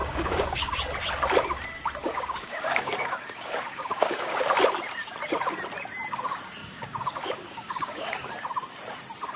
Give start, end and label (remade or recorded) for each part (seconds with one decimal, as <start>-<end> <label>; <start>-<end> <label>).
0.0-0.7 remade; 0.7-2.0 recorded; 2.0-4.4 remade; 4.4-6.6 recorded; 6.6-8.3 remade; 8.3-9.4 recorded